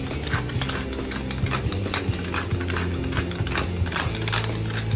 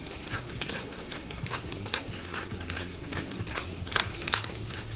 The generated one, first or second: second